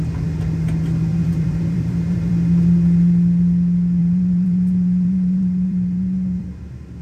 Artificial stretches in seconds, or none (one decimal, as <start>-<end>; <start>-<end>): 1.1-2.3; 4.0-6.6